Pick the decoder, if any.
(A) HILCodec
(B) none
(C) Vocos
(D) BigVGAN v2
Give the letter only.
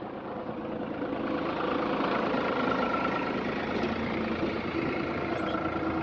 B